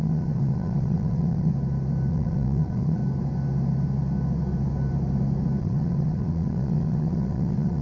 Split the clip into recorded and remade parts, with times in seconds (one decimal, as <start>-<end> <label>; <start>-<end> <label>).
0.0-1.5 remade; 1.5-2.1 recorded; 2.1-3.0 remade; 3.0-5.6 recorded; 5.6-7.8 remade